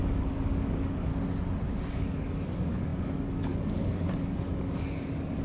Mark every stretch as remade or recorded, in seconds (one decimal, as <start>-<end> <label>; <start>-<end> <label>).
0.0-1.1 remade; 1.1-1.9 recorded; 1.9-5.4 remade